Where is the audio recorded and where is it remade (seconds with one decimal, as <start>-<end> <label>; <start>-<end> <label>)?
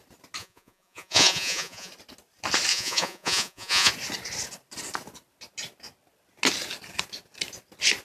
0.0-0.4 recorded; 0.4-1.9 remade; 1.9-2.7 recorded; 2.7-3.9 remade; 3.9-8.0 recorded